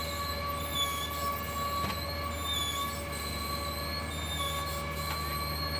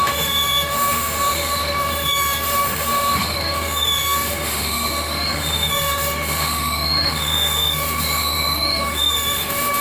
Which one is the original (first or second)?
first